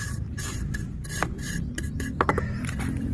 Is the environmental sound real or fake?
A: real